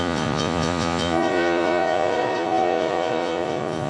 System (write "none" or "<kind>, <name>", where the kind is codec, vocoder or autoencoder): vocoder, Vocos